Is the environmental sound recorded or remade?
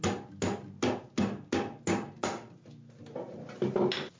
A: recorded